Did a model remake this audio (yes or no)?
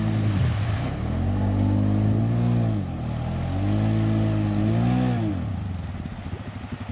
no